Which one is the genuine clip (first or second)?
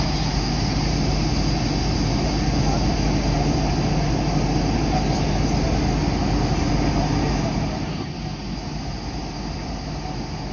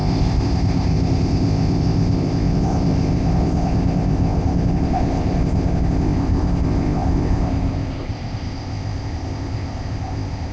first